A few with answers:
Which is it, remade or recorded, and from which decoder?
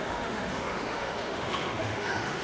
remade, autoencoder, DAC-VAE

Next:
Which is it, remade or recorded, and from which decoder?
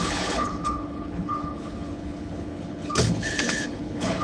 remade, codec, HILCodec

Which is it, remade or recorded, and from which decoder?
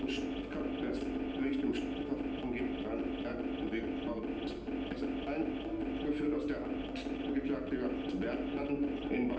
recorded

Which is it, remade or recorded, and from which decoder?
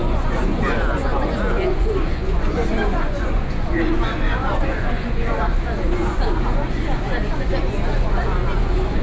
remade, vocoder, Vocos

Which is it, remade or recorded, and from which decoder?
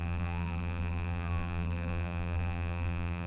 remade, vocoder, BigVGAN v2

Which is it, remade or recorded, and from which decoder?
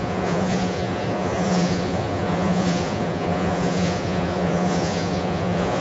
remade, vocoder, Vocos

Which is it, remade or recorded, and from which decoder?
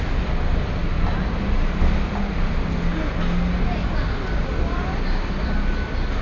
recorded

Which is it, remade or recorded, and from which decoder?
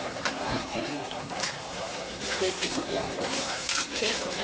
remade, codec, SNAC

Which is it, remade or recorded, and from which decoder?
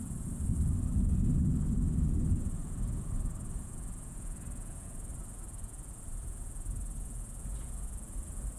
remade, vocoder, Vocos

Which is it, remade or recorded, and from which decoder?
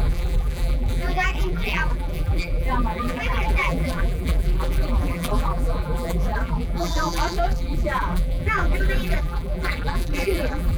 remade, vocoder, BigVGAN v2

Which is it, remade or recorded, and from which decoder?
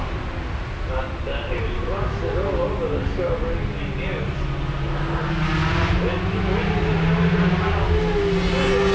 recorded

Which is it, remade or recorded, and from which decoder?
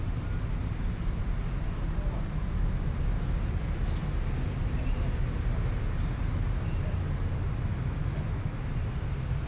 recorded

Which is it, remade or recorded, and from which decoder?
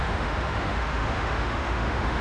remade, autoencoder, DAC-VAE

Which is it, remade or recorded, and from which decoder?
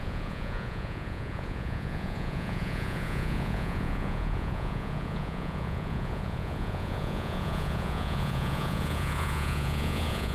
remade, vocoder, Vocos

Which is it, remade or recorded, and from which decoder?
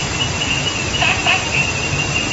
recorded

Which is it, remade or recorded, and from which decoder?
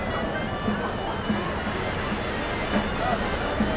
recorded